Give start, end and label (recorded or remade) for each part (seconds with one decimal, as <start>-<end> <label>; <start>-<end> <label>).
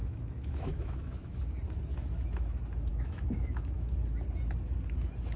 0.0-1.4 remade; 1.4-2.9 recorded; 2.9-3.9 remade; 3.9-5.4 recorded